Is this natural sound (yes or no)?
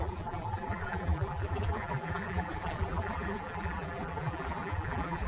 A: no